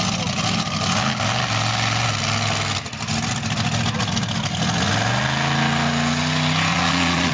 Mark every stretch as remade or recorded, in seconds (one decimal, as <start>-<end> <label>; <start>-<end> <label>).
0.0-6.7 recorded; 6.7-7.3 remade